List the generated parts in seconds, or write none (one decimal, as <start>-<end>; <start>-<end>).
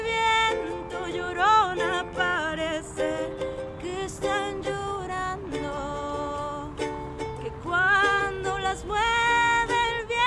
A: none